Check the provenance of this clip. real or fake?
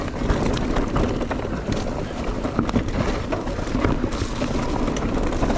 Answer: real